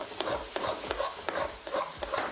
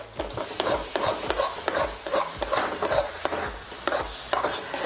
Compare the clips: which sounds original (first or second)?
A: second